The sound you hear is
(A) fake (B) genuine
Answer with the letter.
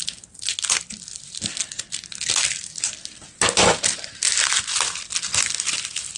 B